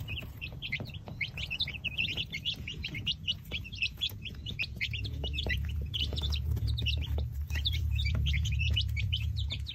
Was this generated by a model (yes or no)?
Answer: yes